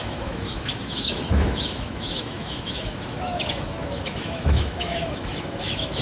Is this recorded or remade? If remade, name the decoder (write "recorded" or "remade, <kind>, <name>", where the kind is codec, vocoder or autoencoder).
remade, autoencoder, DAC-VAE